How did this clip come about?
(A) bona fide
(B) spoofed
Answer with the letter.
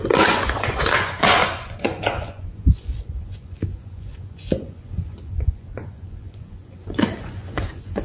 B